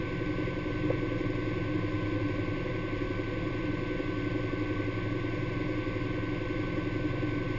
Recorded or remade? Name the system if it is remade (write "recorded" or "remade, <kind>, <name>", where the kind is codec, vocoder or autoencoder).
recorded